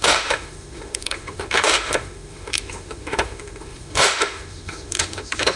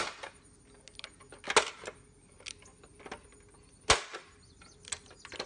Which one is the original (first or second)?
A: second